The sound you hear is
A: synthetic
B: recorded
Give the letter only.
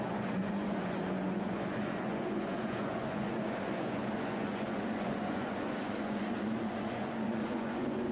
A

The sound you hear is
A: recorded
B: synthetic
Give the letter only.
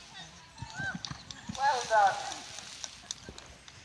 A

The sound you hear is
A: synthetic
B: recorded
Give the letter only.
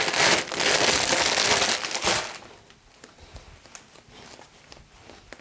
B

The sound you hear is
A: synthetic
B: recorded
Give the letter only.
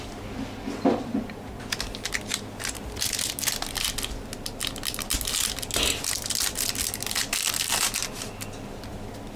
B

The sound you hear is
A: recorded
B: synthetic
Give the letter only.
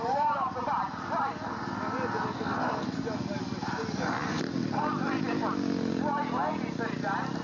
A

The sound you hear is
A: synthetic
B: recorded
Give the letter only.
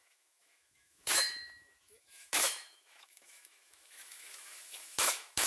A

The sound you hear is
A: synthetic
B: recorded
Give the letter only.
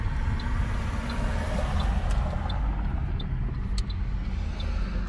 B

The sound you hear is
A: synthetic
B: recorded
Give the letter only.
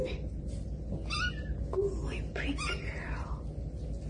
B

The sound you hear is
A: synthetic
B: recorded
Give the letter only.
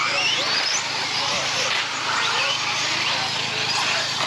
B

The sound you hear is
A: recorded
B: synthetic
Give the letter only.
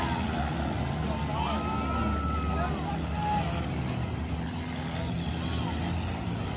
A